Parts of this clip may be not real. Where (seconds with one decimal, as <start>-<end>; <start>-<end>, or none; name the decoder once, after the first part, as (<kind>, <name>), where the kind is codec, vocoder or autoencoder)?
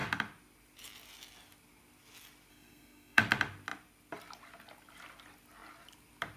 2.5-3.2 (codec, SNAC)